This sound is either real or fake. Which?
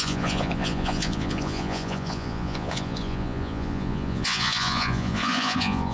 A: fake